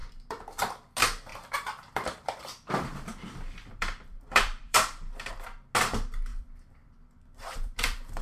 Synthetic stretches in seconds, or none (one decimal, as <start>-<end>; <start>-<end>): 1.3-5.3; 6.3-8.2